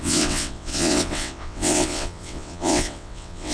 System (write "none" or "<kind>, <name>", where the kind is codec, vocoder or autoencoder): vocoder, WaveNeXt